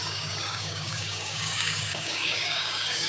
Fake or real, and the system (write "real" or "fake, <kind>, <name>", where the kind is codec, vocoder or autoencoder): fake, codec, DAC